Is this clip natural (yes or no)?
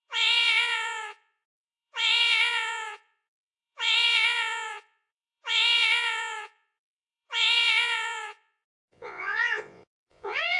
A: no